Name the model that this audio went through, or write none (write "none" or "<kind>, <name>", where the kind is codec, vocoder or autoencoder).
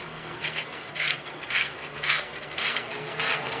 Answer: codec, SNAC